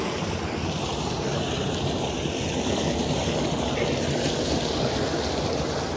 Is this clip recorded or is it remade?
recorded